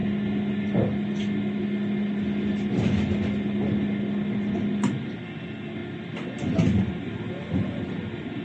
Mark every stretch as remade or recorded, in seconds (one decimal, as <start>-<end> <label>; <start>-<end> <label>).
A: 0.0-8.4 recorded